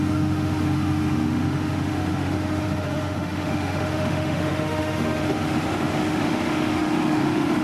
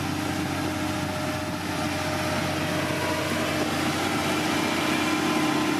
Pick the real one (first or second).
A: second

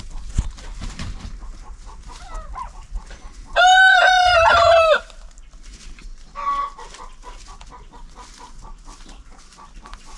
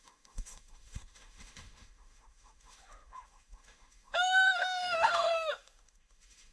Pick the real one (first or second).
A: first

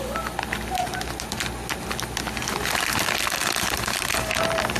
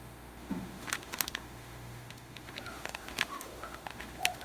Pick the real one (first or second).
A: first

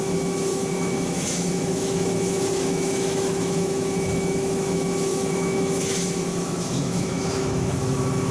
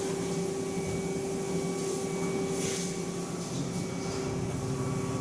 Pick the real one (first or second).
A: second